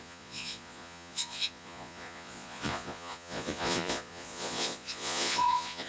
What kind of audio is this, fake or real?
fake